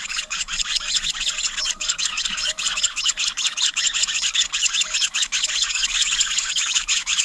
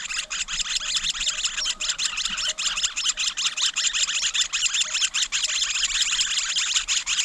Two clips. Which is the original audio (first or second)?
second